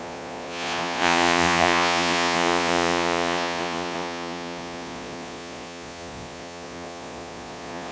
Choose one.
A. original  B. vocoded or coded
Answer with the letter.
B